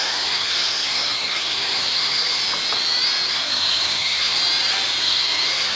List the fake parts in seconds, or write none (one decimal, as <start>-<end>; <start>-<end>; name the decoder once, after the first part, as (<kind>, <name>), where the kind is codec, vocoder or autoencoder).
0.0-2.4 (codec, SNAC); 3.3-4.4; 5.0-5.8